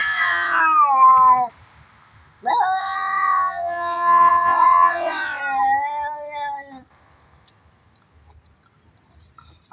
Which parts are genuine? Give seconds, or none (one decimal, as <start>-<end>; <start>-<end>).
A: 0.6-2.8; 5.4-9.7